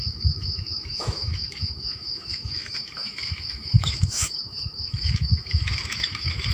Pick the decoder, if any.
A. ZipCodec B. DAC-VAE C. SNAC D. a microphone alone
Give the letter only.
B